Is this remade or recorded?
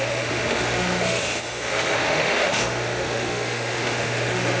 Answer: remade